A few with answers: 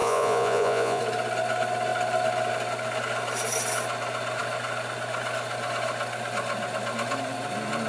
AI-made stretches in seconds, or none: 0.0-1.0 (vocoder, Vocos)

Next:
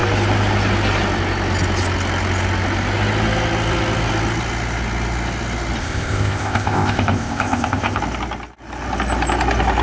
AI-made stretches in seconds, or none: 5.8-8.0 (codec, ZipCodec)